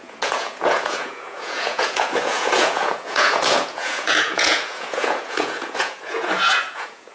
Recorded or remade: remade